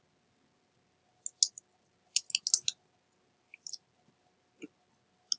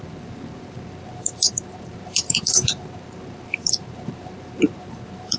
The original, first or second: first